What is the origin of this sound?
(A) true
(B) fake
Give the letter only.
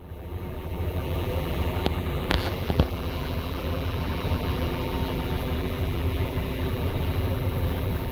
B